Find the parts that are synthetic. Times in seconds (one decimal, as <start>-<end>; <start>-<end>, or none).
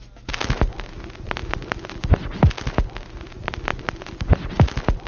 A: none